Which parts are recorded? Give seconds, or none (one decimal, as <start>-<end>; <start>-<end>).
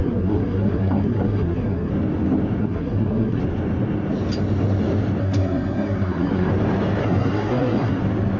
1.9-2.6; 3.4-5.2; 6.5-7.0; 8.0-8.4